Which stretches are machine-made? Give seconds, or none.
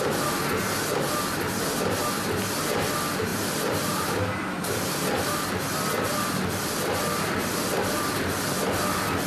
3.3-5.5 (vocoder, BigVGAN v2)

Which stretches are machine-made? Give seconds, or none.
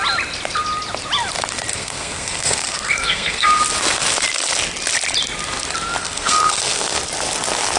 1.7-3.6 (codec, SNAC); 6.0-7.0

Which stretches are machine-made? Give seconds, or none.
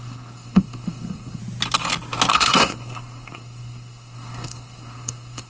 0.0-1.4 (codec, SNAC); 2.3-5.5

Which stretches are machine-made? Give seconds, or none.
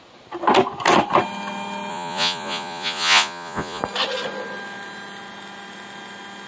1.9-3.8 (vocoder, Vocos)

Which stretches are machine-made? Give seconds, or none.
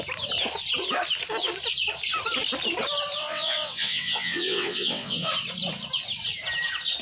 3.2-5.3 (vocoder, WaveNeXt)